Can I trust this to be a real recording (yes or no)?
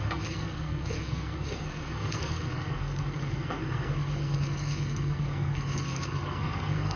no